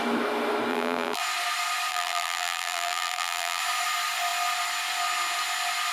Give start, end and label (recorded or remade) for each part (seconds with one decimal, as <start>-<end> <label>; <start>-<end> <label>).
0.0-0.7 recorded; 0.7-1.2 remade; 1.2-1.9 recorded; 1.9-3.6 remade; 3.6-5.9 recorded